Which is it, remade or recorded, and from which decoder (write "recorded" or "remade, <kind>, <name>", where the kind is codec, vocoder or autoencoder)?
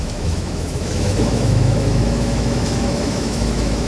remade, autoencoder, DAC-VAE